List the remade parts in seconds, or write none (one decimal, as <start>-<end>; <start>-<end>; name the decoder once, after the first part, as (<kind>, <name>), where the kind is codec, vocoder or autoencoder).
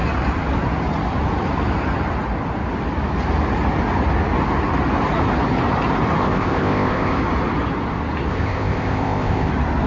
6.2-7.2 (codec, ZipCodec); 8.3-9.5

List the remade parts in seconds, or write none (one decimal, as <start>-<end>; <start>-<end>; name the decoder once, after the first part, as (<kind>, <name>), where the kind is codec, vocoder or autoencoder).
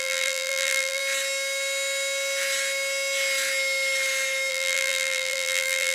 0.0-1.0 (vocoder, BigVGAN v2); 4.5-5.9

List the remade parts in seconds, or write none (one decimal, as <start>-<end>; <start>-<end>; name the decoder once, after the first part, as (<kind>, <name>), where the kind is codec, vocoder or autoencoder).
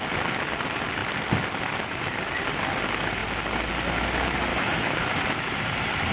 4.5-5.1 (autoencoder, DAC-VAE)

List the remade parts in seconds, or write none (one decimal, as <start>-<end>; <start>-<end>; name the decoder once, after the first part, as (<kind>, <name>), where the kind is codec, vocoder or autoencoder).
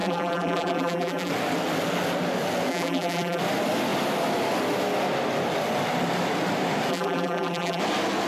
0.0-1.3 (vocoder, BigVGAN v2); 2.7-3.4; 6.9-7.8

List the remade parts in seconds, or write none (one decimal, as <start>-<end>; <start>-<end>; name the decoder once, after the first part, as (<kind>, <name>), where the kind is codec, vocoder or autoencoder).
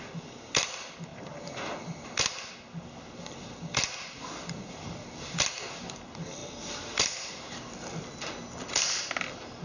none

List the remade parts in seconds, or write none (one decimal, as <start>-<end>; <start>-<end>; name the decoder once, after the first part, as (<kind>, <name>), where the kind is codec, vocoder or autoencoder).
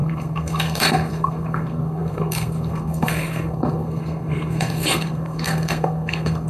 0.0-6.5 (codec, SNAC)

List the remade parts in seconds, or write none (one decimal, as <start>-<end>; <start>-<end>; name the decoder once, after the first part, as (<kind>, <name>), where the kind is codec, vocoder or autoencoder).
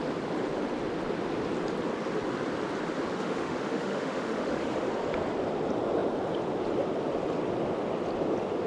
3.1-4.9 (autoencoder, DAC-VAE)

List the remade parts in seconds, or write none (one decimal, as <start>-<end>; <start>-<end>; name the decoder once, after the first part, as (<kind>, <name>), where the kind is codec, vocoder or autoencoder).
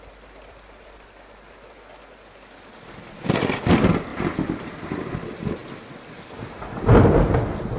none